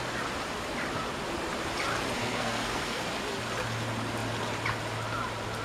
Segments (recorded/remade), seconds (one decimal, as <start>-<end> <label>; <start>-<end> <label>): 0.0-2.2 recorded; 2.2-3.0 remade; 3.0-5.6 recorded